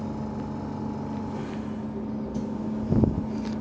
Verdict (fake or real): real